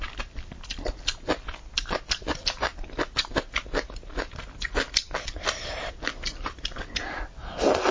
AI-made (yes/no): no